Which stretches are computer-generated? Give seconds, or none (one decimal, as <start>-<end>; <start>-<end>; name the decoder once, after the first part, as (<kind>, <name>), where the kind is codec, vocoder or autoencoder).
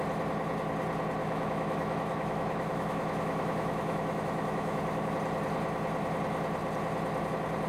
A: 1.2-5.1 (autoencoder, DAC-VAE)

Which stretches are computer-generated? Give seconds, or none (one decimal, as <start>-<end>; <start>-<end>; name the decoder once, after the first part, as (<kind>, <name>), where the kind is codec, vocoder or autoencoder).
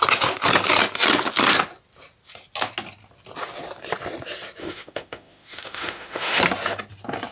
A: 4.6-6.4 (autoencoder, DAC-VAE)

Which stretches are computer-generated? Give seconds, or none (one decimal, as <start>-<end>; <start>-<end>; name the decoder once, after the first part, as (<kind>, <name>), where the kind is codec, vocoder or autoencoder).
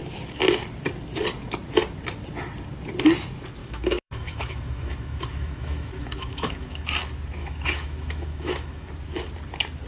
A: 3.6-6.9 (autoencoder, DAC-VAE); 7.4-8.9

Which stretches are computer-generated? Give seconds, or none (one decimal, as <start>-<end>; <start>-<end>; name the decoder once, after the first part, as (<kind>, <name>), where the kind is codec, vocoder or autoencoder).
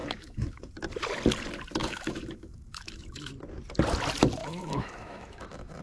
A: 0.0-0.6 (autoencoder, DAC-VAE); 1.8-3.3; 4.4-5.8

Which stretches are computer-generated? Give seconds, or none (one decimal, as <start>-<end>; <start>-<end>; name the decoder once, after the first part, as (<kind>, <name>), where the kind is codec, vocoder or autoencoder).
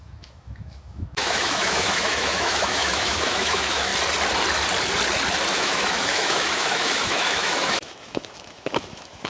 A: 0.0-3.9 (autoencoder, DAC-VAE); 5.5-9.3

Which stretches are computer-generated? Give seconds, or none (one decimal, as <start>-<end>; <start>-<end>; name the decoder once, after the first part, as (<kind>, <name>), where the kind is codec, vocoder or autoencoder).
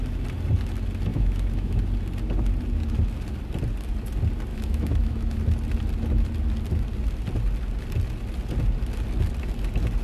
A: 1.1-1.8 (autoencoder, DAC-VAE); 4.5-5.4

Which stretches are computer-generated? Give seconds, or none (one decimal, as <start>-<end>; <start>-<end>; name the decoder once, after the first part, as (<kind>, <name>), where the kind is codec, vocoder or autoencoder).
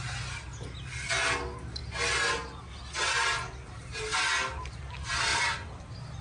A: none